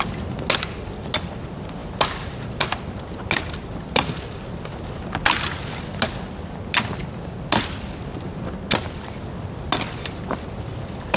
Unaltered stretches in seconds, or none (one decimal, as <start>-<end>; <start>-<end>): 0.0-11.2